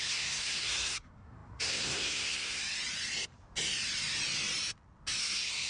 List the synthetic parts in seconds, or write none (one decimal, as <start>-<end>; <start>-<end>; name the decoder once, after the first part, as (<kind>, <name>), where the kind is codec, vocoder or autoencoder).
0.0-2.6 (codec, SNAC); 5.2-5.7

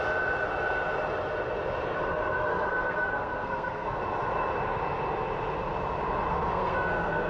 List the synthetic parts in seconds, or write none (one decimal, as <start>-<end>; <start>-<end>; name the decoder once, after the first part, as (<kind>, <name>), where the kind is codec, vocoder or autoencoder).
2.5-4.0 (codec, SNAC); 6.3-7.3